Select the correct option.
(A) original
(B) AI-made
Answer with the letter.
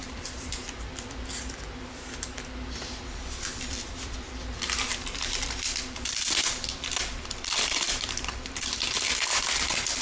B